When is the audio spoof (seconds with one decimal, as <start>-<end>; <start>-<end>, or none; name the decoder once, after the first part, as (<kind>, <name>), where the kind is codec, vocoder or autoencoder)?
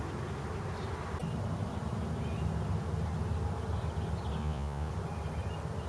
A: 4.4-4.9 (vocoder, Vocos)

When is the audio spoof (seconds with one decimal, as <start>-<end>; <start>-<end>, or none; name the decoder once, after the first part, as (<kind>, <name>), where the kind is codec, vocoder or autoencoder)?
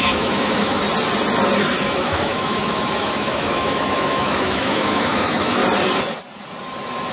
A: 0.0-0.8 (autoencoder, DAC-VAE); 1.8-5.6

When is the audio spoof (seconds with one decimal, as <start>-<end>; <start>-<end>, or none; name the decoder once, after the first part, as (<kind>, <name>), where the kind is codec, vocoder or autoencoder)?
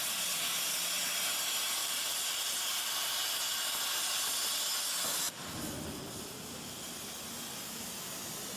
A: 1.8-3.8 (vocoder, BigVGAN v2)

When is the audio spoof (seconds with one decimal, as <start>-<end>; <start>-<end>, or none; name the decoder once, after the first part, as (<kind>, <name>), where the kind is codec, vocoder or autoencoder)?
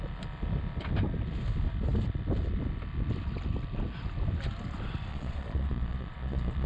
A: 5.1-6.7 (vocoder, Vocos)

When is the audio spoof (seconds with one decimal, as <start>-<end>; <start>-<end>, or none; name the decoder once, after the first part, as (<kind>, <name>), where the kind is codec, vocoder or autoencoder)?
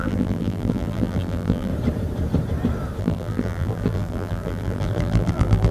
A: 0.0-1.7 (vocoder, BigVGAN v2); 3.0-5.7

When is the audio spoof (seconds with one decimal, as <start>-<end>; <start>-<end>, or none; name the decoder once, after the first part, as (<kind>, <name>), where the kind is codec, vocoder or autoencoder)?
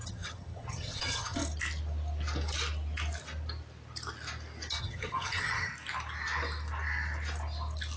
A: 0.0-1.4 (vocoder, HiFi-GAN); 4.8-5.7